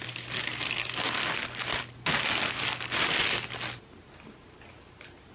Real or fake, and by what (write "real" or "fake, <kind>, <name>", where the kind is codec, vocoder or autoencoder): real